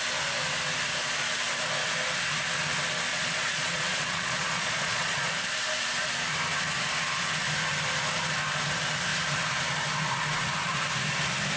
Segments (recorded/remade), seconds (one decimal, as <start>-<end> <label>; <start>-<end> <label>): 0.0-3.1 recorded; 3.1-5.3 remade; 5.3-11.6 recorded